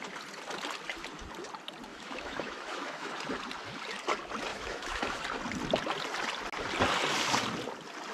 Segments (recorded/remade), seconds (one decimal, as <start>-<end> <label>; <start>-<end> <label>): 0.0-1.9 recorded; 1.9-3.1 remade; 3.1-4.5 recorded; 4.5-5.2 remade; 5.2-8.1 recorded